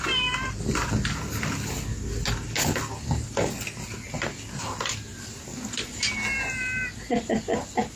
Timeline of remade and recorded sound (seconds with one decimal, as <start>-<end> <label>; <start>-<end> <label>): 0.0-8.0 recorded